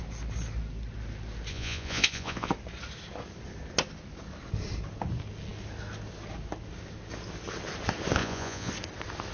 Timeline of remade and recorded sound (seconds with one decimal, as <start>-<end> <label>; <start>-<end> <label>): 0.0-1.5 recorded; 1.5-2.5 remade; 2.5-8.2 recorded; 8.2-8.7 remade; 8.7-9.3 recorded